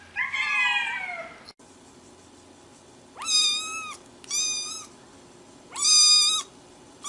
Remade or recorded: recorded